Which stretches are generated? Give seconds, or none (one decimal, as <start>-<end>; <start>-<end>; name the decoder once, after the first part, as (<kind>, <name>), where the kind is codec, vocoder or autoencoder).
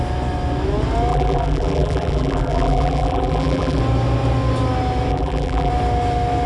1.1-3.8 (vocoder, BigVGAN v2); 5.1-5.7